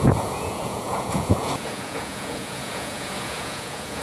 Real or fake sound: fake